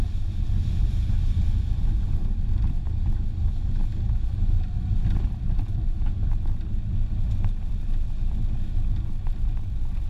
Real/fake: real